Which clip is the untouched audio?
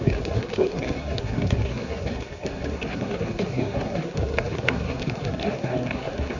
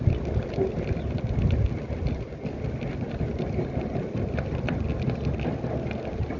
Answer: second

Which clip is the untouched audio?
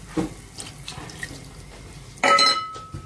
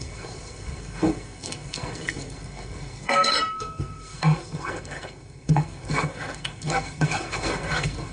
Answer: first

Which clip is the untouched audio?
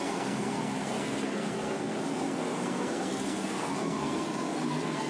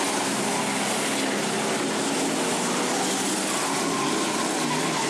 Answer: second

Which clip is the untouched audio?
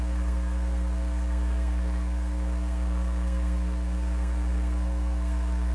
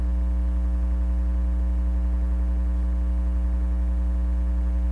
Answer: second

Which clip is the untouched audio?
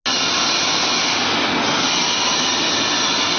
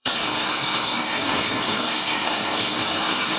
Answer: first